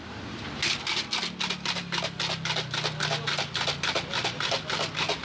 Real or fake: real